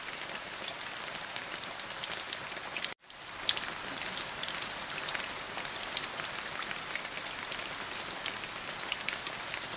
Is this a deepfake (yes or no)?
no